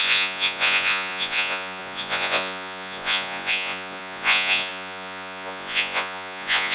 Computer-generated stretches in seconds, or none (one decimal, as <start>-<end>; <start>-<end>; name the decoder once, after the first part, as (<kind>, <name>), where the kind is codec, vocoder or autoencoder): 0.0-6.7 (vocoder, Vocos)